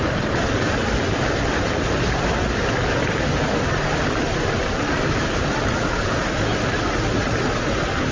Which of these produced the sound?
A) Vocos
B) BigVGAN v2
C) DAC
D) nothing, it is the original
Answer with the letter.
D